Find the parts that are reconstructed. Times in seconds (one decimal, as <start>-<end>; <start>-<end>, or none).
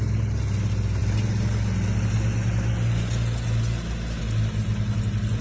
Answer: none